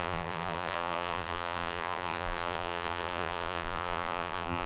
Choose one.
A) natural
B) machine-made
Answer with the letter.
B